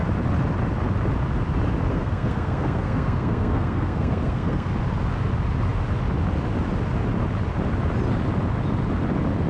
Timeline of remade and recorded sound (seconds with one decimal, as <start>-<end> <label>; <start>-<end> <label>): 0.0-1.9 recorded; 1.9-4.7 remade; 4.7-9.5 recorded